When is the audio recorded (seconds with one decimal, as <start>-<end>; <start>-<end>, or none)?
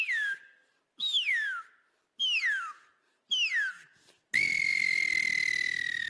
0.0-6.1